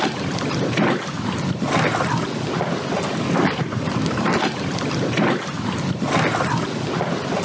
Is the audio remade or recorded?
recorded